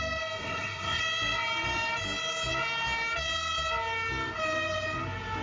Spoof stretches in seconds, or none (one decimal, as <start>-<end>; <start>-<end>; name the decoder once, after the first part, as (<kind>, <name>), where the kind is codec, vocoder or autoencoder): 0.4-1.0 (codec, SNAC)